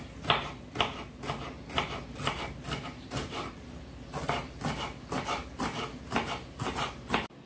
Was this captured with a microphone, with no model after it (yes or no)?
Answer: yes